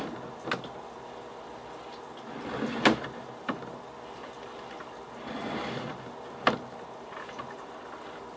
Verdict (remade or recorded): recorded